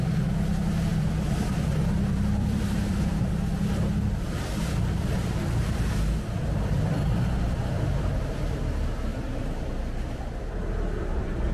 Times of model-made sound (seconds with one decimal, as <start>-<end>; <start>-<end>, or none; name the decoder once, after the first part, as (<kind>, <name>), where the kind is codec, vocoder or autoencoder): 0.9-5.9 (vocoder, BigVGAN v2); 9.1-10.2